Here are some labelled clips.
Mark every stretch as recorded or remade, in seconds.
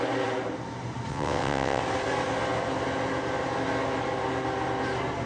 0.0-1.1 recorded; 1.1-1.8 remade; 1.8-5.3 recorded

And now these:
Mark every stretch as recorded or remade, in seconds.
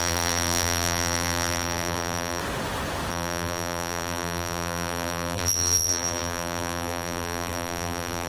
0.0-2.4 remade; 2.4-3.1 recorded; 3.1-8.3 remade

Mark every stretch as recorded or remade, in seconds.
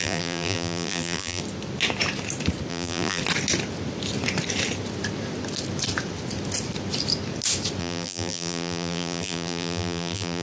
0.0-1.4 remade; 1.4-2.7 recorded; 2.7-3.2 remade; 3.2-7.8 recorded; 7.8-10.4 remade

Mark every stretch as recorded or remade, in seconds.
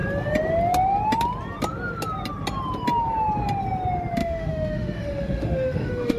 0.0-4.2 recorded; 4.2-6.2 remade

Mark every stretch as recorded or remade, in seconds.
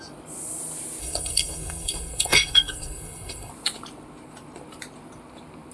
0.0-1.0 recorded; 1.0-3.5 remade; 3.5-5.7 recorded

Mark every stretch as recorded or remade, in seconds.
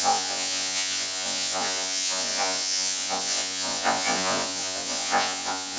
0.0-5.8 remade